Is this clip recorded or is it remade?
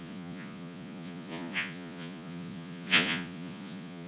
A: remade